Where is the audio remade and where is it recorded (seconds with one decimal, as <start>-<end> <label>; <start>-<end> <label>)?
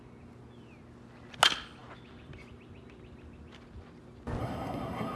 0.0-4.4 recorded; 4.4-5.2 remade